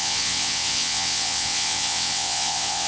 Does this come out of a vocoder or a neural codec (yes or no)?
yes